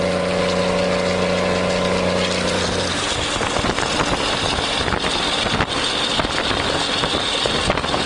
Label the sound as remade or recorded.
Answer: recorded